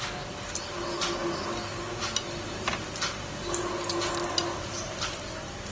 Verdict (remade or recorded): recorded